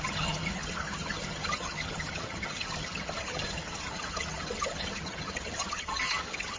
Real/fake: fake